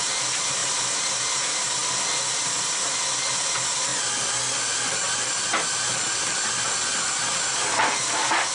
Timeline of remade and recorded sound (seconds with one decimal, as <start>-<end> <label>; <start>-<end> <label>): 0.0-8.5 recorded